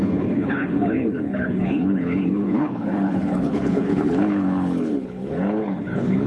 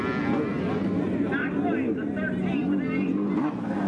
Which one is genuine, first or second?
second